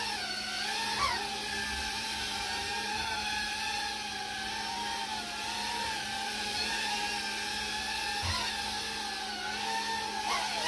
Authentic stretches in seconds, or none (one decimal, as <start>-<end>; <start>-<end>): 0.0-1.8; 3.8-4.7; 7.1-10.7